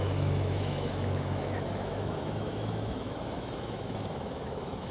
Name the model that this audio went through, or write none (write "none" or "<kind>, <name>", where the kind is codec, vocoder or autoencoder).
autoencoder, DAC-VAE